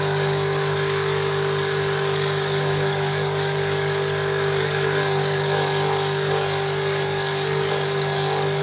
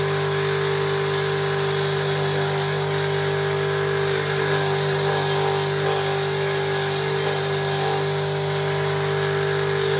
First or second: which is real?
second